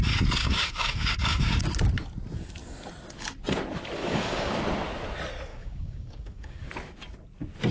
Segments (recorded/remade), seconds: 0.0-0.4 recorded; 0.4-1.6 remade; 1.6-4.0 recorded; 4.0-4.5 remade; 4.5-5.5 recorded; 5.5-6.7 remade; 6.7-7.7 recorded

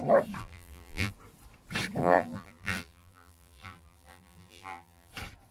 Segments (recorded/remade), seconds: 0.0-0.4 recorded; 0.4-1.1 remade; 1.1-2.0 recorded; 2.0-5.1 remade; 5.1-5.5 recorded

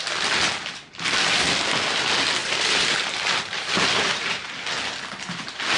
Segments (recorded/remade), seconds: 0.0-2.4 recorded; 2.4-4.5 remade; 4.5-5.8 recorded

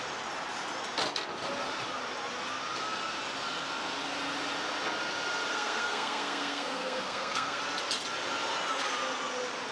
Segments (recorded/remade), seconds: 0.0-5.5 recorded; 5.5-7.6 remade; 7.6-9.7 recorded